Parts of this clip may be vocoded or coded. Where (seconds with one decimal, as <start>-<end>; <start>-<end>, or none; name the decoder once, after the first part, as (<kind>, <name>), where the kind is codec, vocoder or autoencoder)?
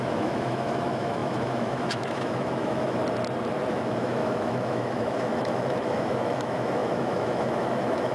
0.0-3.0 (autoencoder, DAC-VAE); 3.7-8.1